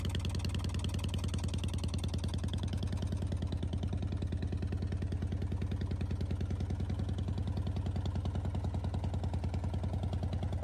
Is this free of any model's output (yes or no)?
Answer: yes